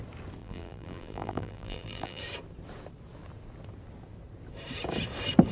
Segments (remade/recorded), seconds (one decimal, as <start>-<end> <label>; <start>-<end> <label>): 0.0-0.4 recorded; 0.4-2.2 remade; 2.2-5.5 recorded